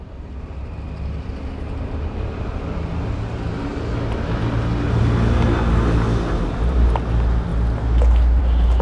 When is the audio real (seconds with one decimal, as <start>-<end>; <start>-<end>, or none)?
0.0-8.8